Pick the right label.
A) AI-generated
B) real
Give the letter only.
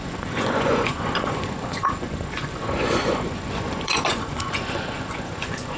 A